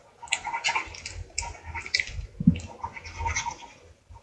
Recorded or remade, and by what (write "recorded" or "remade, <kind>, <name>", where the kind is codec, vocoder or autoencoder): recorded